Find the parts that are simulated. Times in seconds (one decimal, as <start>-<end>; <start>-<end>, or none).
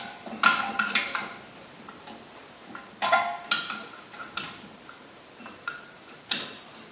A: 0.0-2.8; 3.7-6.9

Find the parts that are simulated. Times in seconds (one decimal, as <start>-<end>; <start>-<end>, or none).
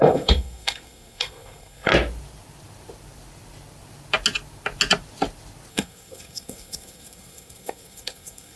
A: 0.0-1.9; 5.7-8.6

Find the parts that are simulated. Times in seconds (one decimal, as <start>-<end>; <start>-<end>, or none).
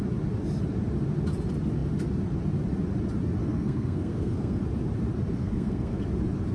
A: 3.4-4.6; 5.4-6.0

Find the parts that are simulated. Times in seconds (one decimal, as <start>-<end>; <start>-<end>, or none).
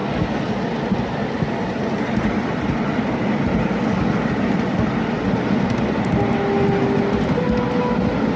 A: none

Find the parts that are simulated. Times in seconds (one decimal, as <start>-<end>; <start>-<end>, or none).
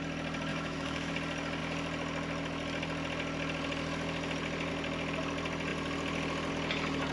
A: 0.5-1.1